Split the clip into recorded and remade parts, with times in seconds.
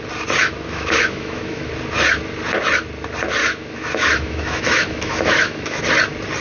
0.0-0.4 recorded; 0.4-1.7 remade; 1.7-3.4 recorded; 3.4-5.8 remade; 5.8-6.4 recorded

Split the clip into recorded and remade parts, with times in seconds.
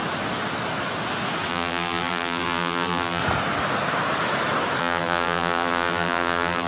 0.0-1.5 recorded; 1.5-3.2 remade; 3.2-4.8 recorded; 4.8-6.7 remade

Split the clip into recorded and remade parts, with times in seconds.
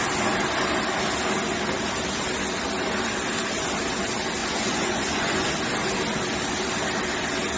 0.0-4.4 recorded; 4.4-5.5 remade; 5.5-7.6 recorded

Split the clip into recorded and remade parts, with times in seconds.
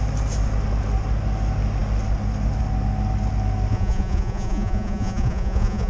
0.0-3.7 recorded; 3.7-5.9 remade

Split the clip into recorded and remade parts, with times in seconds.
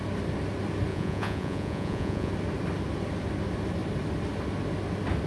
0.0-0.9 recorded; 0.9-2.3 remade; 2.3-5.3 recorded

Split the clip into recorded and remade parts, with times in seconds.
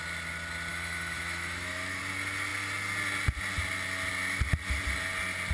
0.0-0.7 recorded; 0.7-2.0 remade; 2.0-5.5 recorded